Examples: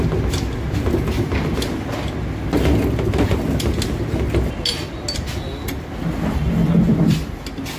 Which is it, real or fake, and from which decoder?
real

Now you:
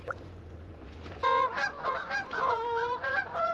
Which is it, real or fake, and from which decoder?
fake, vocoder, Vocos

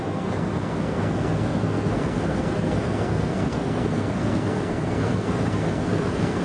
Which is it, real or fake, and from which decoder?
fake, codec, SNAC